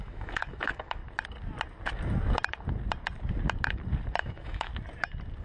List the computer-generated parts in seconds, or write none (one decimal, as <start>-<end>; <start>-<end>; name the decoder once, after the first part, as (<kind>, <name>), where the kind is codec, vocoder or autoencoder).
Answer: 0.0-1.0 (autoencoder, DAC-VAE); 4.2-4.7